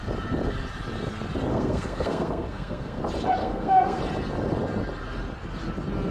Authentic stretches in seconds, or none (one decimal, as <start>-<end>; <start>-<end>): 0.0-1.5; 3.0-3.4; 4.0-6.1